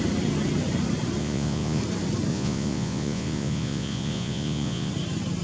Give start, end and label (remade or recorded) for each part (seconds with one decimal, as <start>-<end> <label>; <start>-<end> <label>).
0.0-1.2 recorded; 1.2-1.8 remade; 1.8-2.3 recorded; 2.3-4.9 remade; 4.9-5.4 recorded